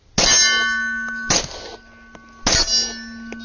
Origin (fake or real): real